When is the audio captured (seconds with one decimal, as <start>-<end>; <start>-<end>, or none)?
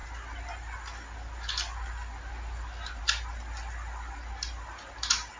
0.0-5.4